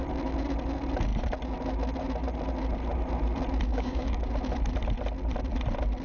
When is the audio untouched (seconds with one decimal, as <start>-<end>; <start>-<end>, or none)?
0.0-3.7; 4.3-6.0